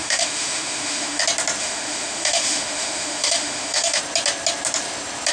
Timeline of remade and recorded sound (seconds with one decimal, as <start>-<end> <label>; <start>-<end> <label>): 0.0-1.2 remade; 1.2-1.6 recorded; 1.6-4.0 remade; 4.0-5.3 recorded